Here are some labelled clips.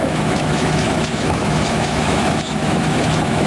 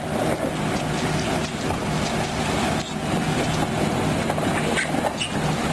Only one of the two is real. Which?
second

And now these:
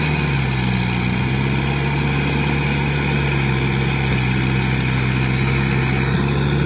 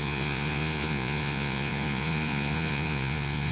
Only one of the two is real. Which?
first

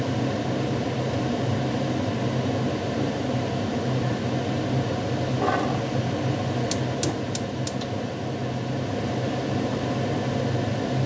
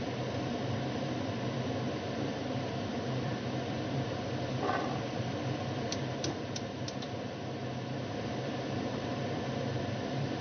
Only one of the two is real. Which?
first